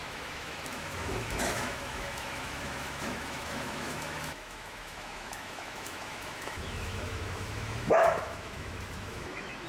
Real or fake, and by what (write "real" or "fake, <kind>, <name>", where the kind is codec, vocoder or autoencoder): fake, autoencoder, DAC-VAE